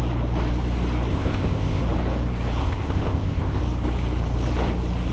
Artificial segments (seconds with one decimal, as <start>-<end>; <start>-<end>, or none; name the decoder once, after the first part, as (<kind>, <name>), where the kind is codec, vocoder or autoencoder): 1.1-1.8 (codec, ZipCodec); 2.6-3.6